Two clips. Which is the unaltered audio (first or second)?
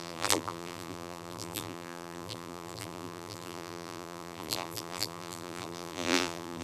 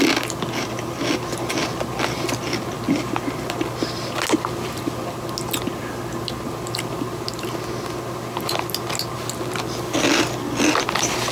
second